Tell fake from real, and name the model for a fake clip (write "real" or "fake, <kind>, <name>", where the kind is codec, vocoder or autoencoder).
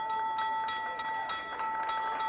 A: real